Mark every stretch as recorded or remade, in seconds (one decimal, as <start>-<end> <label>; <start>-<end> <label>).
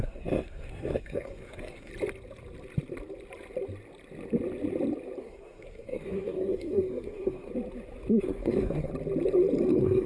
0.0-1.9 remade; 1.9-5.2 recorded; 5.2-7.5 remade; 7.5-8.2 recorded; 8.2-8.9 remade; 8.9-9.7 recorded; 9.7-10.1 remade